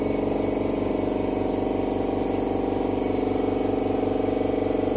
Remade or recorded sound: recorded